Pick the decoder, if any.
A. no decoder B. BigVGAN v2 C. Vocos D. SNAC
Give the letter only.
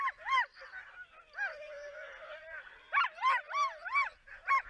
B